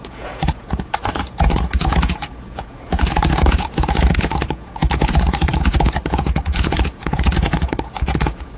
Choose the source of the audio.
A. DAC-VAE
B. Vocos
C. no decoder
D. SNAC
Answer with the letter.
B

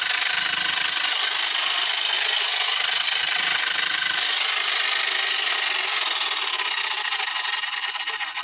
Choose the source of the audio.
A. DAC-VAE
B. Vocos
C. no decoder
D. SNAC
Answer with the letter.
C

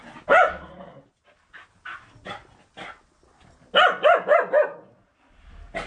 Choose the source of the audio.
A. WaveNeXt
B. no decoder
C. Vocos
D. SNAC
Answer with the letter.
B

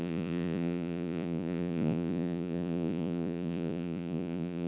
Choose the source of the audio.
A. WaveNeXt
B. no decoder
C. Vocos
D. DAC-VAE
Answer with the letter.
C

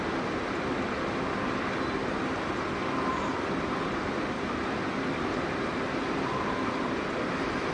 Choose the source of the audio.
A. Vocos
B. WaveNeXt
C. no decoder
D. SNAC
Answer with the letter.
C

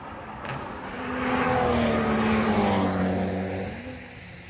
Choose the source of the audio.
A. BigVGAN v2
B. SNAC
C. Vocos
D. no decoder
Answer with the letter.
D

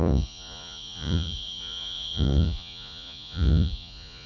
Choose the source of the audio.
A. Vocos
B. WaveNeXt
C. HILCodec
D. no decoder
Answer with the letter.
A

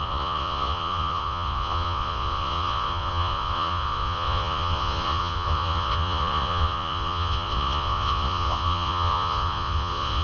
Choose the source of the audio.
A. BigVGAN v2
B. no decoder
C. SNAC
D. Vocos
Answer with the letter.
D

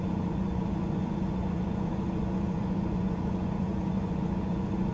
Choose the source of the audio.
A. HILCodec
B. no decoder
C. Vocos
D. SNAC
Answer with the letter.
C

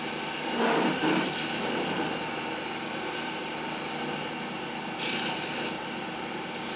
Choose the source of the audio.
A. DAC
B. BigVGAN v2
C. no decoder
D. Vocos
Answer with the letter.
C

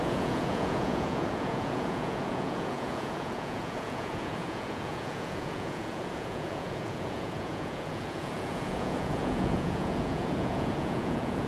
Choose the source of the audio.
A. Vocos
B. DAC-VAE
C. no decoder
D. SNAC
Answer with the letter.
A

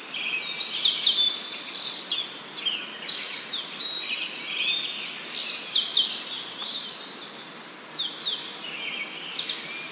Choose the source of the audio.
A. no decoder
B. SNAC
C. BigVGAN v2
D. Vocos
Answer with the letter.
A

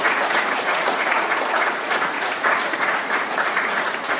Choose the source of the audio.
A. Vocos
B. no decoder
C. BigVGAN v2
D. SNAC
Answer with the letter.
A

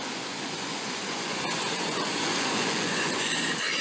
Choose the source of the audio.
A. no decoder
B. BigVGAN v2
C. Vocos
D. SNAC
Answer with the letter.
C